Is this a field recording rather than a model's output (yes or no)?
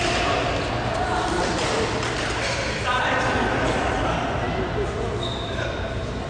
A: yes